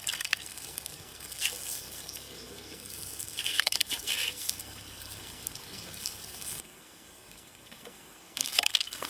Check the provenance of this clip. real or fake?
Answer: fake